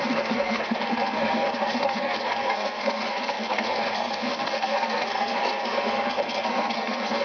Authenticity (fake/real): fake